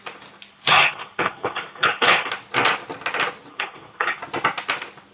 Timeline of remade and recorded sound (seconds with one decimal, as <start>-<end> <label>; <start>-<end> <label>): 0.0-0.5 recorded; 0.5-2.3 remade; 2.3-3.5 recorded; 3.5-4.2 remade; 4.2-5.1 recorded